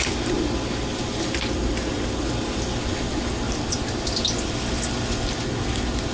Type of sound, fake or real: real